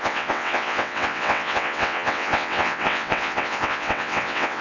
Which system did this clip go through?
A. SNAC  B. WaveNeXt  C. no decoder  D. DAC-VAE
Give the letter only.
B